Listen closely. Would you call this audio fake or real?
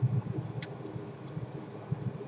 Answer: real